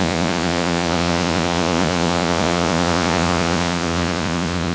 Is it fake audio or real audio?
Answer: fake